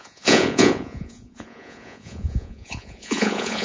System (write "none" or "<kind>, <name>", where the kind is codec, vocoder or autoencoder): vocoder, Vocos